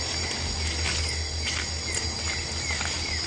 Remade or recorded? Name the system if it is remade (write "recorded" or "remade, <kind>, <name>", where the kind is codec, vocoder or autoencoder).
recorded